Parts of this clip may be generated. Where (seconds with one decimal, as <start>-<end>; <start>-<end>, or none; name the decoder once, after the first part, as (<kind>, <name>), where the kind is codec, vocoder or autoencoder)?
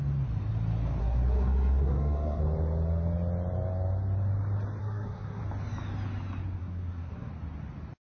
1.0-2.4 (codec, SNAC); 4.8-5.4; 6.6-7.3